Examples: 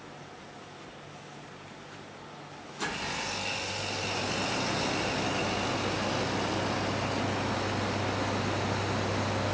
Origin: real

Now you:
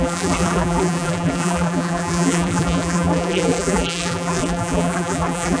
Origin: fake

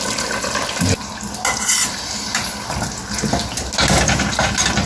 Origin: real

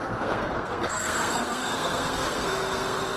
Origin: fake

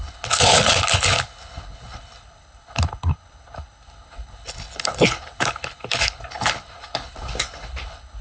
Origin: fake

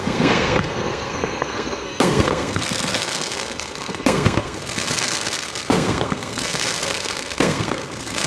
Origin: fake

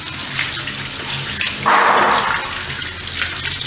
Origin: real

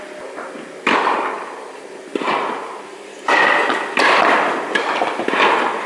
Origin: real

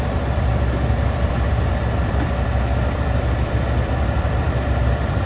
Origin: fake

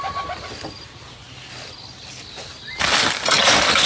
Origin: real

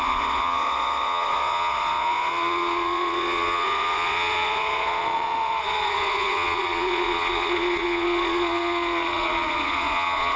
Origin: fake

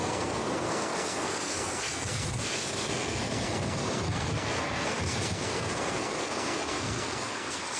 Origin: fake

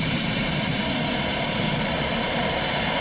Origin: fake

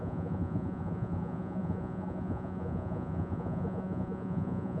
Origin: fake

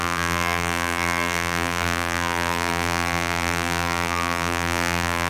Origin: fake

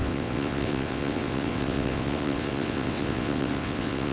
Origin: fake